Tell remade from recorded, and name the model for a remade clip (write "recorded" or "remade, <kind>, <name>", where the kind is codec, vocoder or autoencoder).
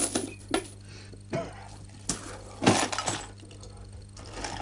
recorded